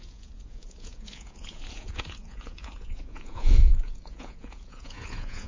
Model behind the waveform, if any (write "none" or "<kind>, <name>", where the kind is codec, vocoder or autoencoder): vocoder, Vocos